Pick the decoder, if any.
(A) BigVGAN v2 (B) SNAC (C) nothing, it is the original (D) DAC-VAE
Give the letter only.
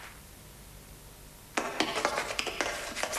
C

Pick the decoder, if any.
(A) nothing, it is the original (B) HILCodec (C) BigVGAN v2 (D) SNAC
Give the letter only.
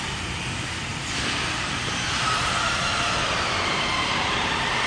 C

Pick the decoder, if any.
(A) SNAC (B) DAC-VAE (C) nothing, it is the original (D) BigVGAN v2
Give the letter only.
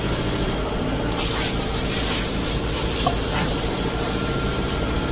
D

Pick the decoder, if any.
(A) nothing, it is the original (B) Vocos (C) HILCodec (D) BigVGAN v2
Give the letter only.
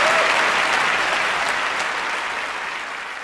A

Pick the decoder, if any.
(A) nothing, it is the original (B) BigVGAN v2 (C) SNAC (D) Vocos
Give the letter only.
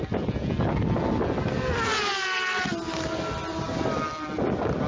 A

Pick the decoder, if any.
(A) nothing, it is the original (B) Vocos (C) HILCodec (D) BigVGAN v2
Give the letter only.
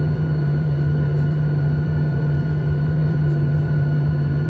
D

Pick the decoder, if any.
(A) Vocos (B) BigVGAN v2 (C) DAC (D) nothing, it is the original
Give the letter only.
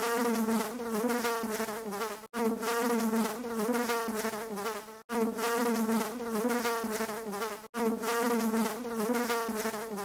D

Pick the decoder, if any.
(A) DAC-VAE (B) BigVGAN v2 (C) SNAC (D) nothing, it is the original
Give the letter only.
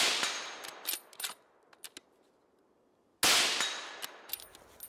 D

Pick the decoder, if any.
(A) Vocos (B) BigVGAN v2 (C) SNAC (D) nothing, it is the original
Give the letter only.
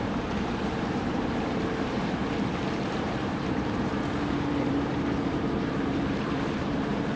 B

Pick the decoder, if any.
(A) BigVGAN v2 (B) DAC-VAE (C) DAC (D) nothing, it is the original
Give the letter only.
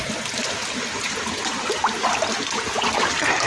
D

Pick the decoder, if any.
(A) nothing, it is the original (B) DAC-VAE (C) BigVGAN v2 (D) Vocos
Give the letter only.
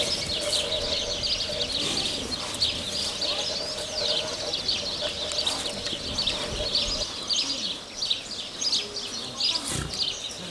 A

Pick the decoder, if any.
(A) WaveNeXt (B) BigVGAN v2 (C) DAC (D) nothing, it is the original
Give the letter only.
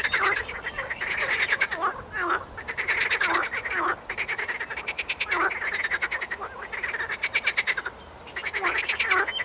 D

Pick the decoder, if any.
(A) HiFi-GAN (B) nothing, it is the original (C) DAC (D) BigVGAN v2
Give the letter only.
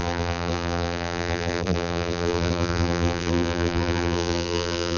D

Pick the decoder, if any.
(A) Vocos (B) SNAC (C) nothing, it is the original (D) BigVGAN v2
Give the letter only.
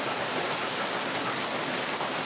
C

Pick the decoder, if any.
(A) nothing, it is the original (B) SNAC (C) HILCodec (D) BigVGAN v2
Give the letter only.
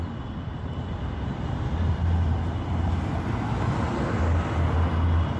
A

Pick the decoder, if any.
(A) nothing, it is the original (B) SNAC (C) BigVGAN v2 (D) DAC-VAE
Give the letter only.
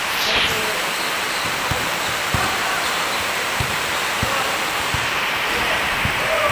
C